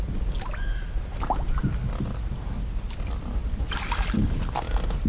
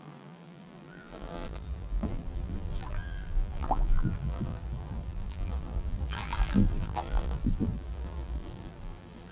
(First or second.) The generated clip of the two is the second